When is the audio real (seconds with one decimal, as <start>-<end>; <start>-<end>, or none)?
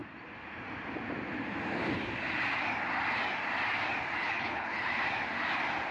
0.0-4.2; 4.9-5.9